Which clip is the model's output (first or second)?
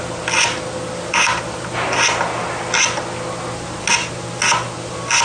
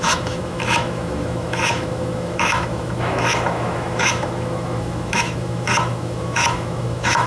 second